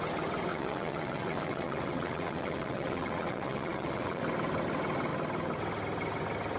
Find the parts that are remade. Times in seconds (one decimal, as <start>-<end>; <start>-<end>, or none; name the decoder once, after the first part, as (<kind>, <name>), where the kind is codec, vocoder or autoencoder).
0.5-4.2 (vocoder, WaveNeXt)